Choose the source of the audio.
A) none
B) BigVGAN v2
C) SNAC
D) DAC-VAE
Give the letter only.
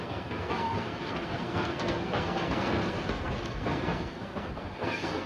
C